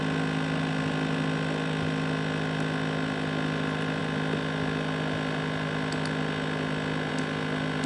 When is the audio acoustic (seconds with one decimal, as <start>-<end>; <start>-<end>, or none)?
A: 0.0-7.9

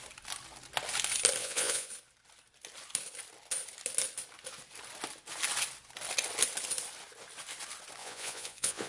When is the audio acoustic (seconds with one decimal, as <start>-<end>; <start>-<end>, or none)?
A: 0.0-1.4; 1.9-8.0

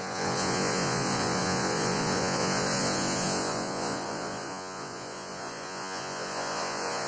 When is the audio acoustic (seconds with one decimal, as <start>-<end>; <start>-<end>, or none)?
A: none

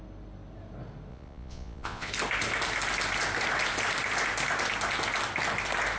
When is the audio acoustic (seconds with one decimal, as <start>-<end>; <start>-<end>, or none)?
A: 0.0-1.1; 2.1-6.0